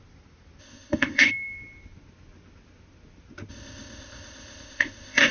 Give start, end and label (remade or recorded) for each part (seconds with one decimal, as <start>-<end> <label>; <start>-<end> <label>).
0.0-0.6 recorded; 0.6-1.3 remade; 1.3-3.5 recorded; 3.5-5.3 remade